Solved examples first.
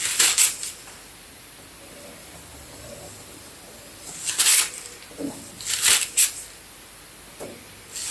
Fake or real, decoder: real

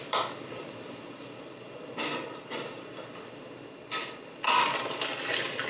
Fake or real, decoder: fake, vocoder, BigVGAN v2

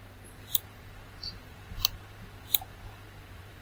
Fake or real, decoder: fake, vocoder, BigVGAN v2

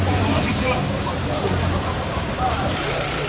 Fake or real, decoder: fake, vocoder, BigVGAN v2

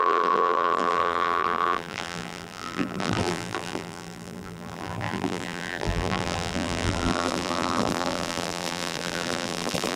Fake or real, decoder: fake, vocoder, BigVGAN v2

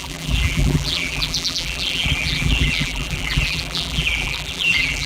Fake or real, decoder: fake, vocoder, BigVGAN v2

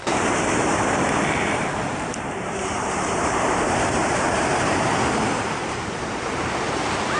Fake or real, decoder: fake, vocoder, BigVGAN v2